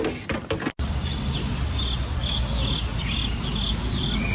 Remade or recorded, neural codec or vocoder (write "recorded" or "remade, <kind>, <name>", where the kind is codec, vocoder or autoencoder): recorded